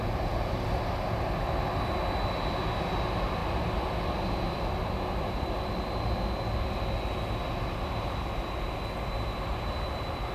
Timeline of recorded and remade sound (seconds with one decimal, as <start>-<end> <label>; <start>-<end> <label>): 0.0-10.3 recorded